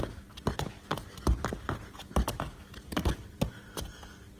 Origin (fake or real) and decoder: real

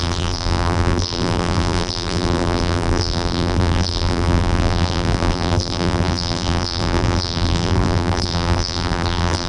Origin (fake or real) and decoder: fake, vocoder, BigVGAN v2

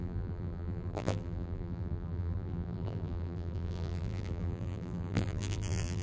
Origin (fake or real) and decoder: fake, vocoder, BigVGAN v2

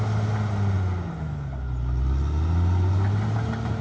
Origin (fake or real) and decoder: real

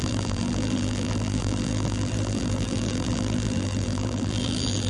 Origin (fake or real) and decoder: fake, vocoder, BigVGAN v2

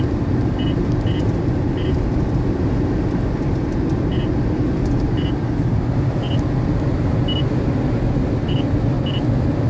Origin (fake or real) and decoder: real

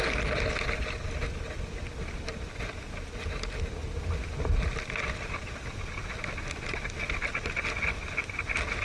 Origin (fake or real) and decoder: real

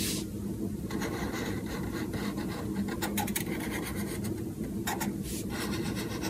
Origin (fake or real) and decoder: fake, vocoder, BigVGAN v2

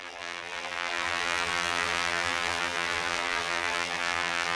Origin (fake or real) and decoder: fake, vocoder, BigVGAN v2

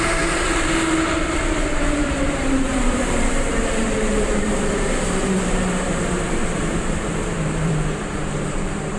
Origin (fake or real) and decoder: fake, vocoder, BigVGAN v2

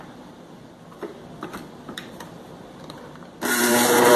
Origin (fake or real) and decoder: fake, vocoder, BigVGAN v2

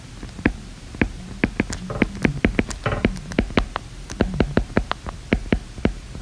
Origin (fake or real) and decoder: real